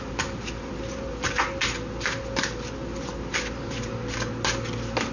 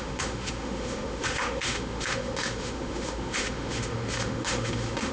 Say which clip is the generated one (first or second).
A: second